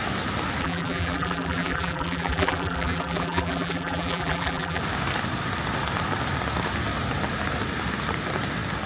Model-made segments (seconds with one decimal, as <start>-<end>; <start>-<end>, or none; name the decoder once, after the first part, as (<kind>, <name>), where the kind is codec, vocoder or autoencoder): 0.6-4.8 (vocoder, BigVGAN v2)